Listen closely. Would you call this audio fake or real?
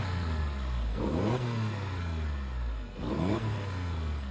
fake